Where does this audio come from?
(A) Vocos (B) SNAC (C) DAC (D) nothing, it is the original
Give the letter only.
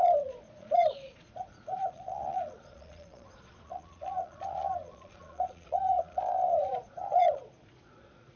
A